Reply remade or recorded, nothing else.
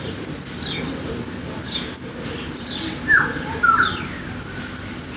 recorded